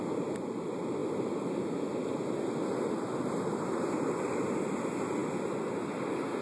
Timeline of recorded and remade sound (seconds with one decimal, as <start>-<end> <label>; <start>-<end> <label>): 0.0-6.4 recorded